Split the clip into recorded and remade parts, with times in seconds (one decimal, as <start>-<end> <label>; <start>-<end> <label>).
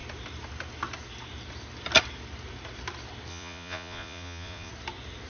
0.0-3.3 recorded; 3.3-4.7 remade; 4.7-5.3 recorded